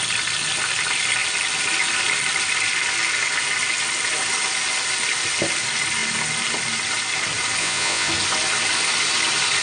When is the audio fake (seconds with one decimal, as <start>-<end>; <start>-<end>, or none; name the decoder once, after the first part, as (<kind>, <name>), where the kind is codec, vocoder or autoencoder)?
7.6-8.1 (vocoder, Vocos)